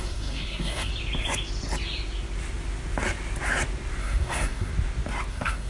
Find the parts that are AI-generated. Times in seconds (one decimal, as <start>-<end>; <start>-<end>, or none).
0.0-0.9; 4.0-4.7; 5.3-5.7

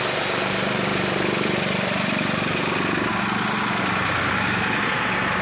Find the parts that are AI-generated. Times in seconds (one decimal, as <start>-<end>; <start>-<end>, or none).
none